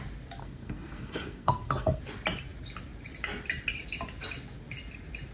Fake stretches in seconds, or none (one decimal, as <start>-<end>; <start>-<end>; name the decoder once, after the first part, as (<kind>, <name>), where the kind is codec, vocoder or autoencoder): 0.4-2.0 (codec, SNAC)